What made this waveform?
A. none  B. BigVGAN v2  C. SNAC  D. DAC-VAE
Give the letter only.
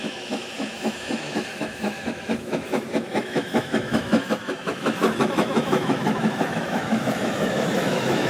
D